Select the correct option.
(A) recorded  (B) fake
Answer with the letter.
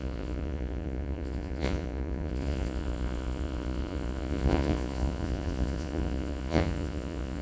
B